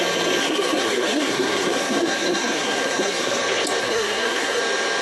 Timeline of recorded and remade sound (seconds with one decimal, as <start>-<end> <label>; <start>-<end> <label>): 0.0-0.4 recorded; 0.4-3.4 remade; 3.4-3.8 recorded; 3.8-4.6 remade; 4.6-5.0 recorded